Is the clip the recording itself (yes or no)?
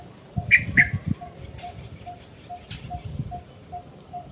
yes